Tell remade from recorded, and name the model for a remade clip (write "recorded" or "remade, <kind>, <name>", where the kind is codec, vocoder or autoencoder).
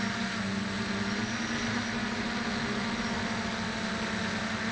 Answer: recorded